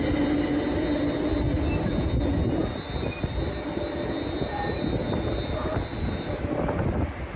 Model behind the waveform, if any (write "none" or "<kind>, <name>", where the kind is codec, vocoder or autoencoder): none